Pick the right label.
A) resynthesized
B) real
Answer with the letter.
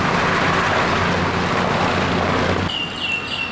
B